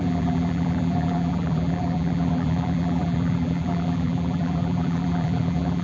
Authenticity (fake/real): fake